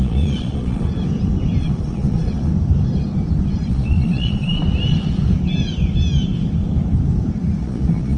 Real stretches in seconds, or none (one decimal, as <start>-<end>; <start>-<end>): 0.9-1.6; 2.5-3.7; 4.6-7.6